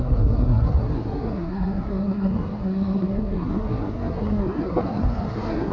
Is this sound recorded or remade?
remade